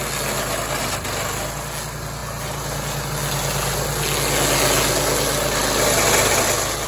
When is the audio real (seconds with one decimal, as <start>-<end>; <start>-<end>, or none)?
0.0-2.2; 3.1-6.9